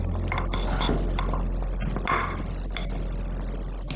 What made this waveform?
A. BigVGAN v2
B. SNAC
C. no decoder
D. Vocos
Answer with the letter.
C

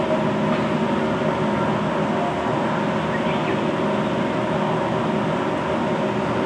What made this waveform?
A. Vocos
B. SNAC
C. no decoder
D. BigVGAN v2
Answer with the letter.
C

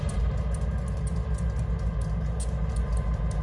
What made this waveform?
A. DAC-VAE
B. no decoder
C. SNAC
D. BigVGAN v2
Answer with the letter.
B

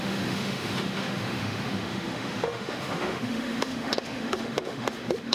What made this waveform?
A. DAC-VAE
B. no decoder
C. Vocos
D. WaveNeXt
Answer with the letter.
A